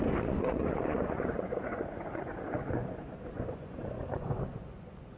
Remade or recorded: remade